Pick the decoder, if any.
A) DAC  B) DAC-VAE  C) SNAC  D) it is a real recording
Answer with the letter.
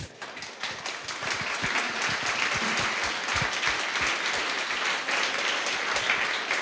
D